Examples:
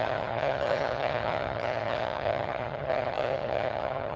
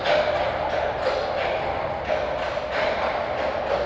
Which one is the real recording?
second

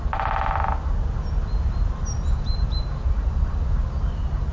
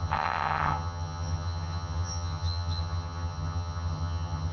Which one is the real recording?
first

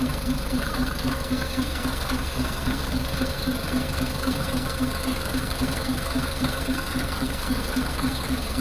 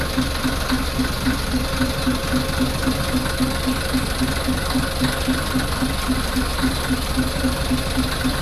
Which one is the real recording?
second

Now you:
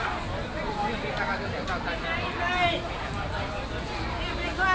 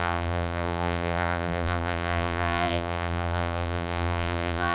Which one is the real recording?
first